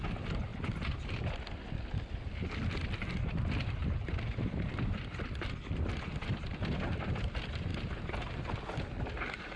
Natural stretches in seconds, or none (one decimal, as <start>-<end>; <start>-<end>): 0.5-2.1; 7.7-9.6